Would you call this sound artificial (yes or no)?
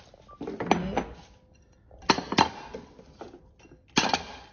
no